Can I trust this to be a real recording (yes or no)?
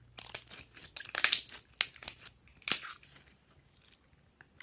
yes